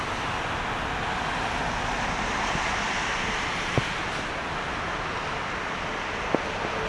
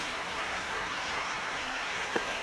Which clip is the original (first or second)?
first